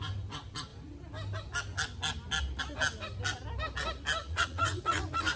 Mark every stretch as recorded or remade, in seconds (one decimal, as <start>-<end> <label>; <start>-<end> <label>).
0.0-4.2 recorded; 4.2-5.4 remade